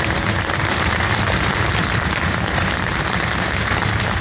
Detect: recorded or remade remade